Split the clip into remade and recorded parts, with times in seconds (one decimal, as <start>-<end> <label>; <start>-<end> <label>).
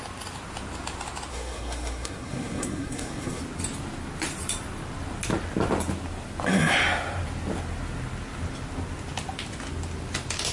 0.0-1.3 recorded; 1.3-3.4 remade; 3.4-10.5 recorded